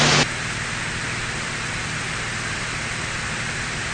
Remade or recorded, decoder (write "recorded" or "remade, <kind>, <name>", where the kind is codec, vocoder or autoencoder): recorded